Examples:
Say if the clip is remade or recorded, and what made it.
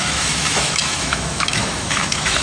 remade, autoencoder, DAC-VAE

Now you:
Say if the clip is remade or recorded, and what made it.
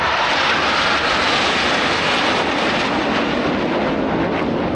recorded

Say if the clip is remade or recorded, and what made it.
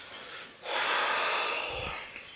recorded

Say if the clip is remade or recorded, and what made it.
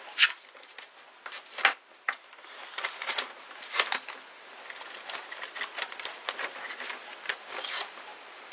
recorded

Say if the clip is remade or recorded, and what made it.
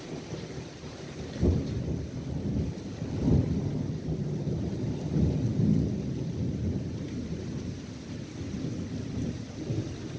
recorded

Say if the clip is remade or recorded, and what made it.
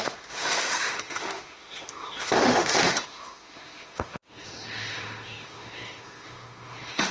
remade, autoencoder, DAC-VAE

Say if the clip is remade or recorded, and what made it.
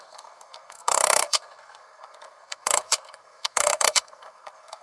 remade, codec, SNAC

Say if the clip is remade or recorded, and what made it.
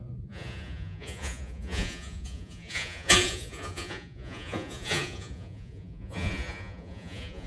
remade, vocoder, Vocos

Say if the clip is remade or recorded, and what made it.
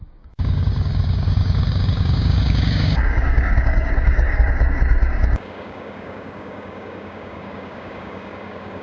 remade, codec, DAC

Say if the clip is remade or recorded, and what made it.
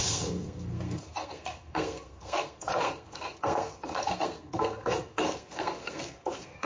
remade, codec, SNAC